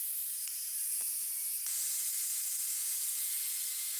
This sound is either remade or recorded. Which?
remade